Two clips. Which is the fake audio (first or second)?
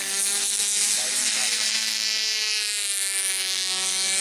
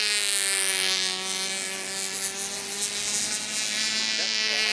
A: first